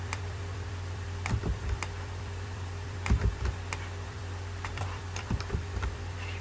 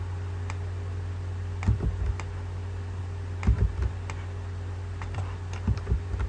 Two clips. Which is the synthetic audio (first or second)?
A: first